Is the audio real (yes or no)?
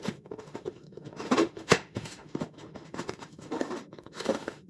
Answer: no